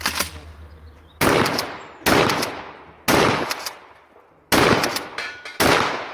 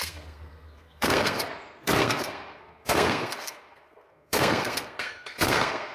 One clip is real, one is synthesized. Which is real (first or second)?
first